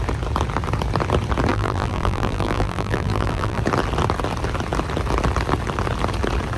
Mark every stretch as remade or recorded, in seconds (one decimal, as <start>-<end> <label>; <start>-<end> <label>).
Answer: 0.0-1.5 recorded; 1.5-3.6 remade; 3.6-6.6 recorded